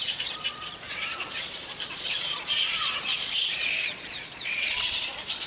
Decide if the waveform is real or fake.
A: fake